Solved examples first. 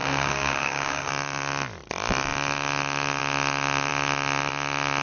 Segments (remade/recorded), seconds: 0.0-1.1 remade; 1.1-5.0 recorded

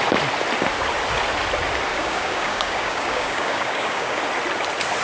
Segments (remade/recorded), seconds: 0.0-1.9 recorded; 1.9-4.2 remade; 4.2-5.0 recorded

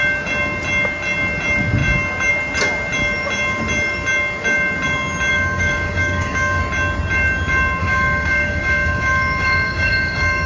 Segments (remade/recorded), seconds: 0.0-5.3 recorded; 5.3-6.6 remade; 6.6-7.8 recorded; 7.8-10.5 remade

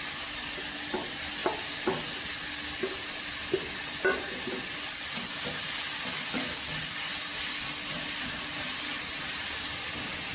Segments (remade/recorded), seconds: 0.0-6.1 recorded; 6.1-6.6 remade; 6.6-10.3 recorded

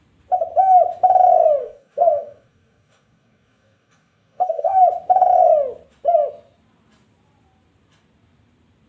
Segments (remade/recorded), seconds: 0.0-1.6 recorded; 1.6-4.8 remade; 4.8-8.9 recorded

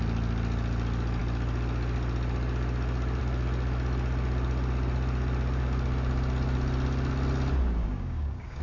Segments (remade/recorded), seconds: 0.0-7.8 recorded; 7.8-8.6 remade

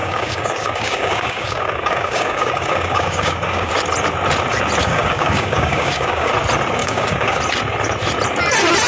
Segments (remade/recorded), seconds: 0.0-3.7 remade; 3.7-4.8 recorded; 4.8-6.3 remade; 6.3-6.8 recorded; 6.8-7.4 remade; 7.4-8.9 recorded